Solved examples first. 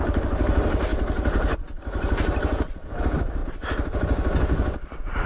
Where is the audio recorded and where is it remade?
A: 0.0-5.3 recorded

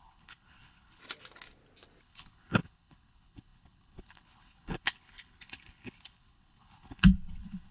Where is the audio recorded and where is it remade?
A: 0.0-1.0 remade; 1.0-2.0 recorded; 2.0-7.7 remade

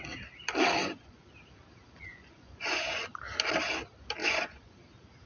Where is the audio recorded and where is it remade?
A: 0.0-0.8 recorded; 0.8-1.3 remade; 1.3-2.1 recorded; 2.1-3.0 remade; 3.0-4.2 recorded; 4.2-4.7 remade; 4.7-5.3 recorded

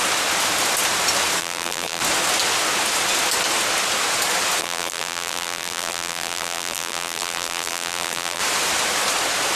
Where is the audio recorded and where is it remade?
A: 0.0-1.4 recorded; 1.4-2.0 remade; 2.0-4.6 recorded; 4.6-8.4 remade; 8.4-9.6 recorded

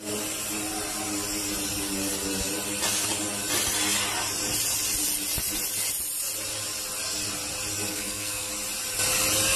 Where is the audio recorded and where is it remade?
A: 0.0-7.9 recorded; 7.9-8.5 remade; 8.5-9.6 recorded

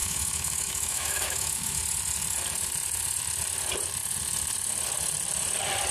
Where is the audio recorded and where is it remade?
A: 0.0-1.8 remade; 1.8-5.9 recorded